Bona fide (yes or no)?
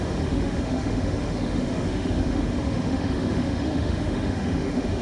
no